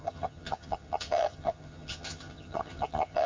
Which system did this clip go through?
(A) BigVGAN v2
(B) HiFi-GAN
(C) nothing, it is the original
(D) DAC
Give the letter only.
B